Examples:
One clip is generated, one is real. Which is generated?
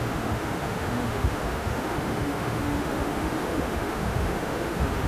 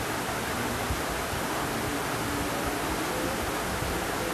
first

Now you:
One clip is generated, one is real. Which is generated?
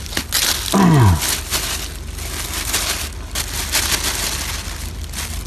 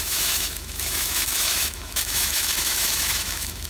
second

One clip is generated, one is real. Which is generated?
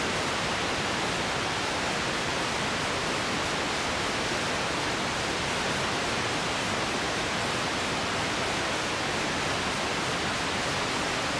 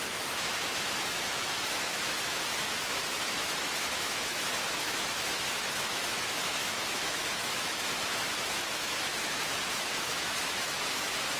second